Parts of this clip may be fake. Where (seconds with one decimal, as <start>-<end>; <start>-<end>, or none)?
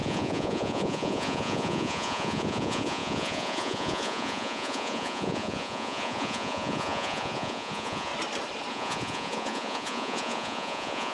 0.0-8.1; 8.7-11.1